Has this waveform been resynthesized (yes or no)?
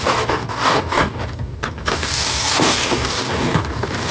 yes